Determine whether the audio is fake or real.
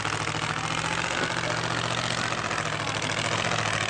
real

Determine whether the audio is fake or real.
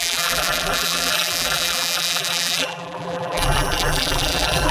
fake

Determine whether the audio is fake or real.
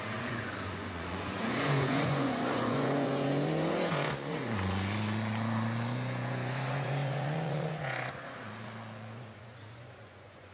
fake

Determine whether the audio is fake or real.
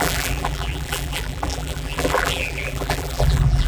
fake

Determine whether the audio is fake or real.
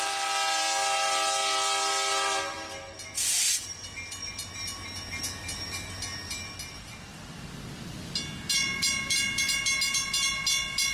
real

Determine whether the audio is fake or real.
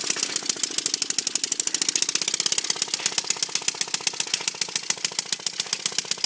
real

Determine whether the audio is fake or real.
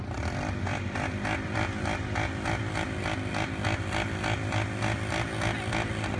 real